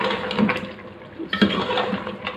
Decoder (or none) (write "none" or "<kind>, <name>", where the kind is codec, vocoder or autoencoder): vocoder, BigVGAN v2